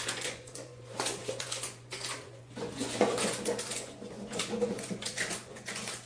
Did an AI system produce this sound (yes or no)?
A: yes